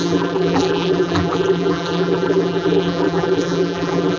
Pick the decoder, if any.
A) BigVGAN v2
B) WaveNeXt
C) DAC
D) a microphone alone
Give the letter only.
A